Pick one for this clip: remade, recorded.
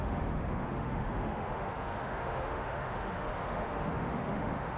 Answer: remade